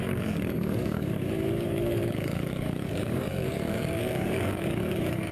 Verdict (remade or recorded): remade